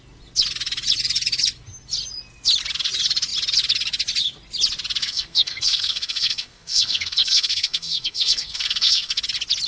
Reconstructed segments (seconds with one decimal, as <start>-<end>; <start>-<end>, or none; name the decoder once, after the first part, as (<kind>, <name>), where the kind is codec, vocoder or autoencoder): 5.0-9.2 (codec, SNAC)